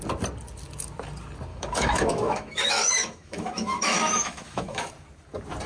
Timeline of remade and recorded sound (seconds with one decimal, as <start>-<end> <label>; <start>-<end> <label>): 0.0-1.5 recorded; 1.5-4.9 remade; 4.9-5.7 recorded